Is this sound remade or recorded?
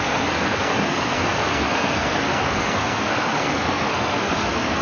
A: remade